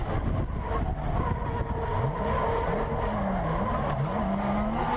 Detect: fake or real real